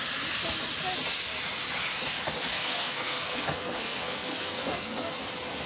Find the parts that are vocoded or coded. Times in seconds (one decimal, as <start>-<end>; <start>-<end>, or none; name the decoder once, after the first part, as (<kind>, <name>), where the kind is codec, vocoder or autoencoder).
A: 2.5-5.2 (codec, SNAC)